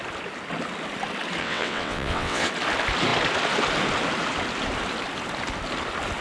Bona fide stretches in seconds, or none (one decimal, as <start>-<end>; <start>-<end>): 0.0-1.4; 2.5-6.2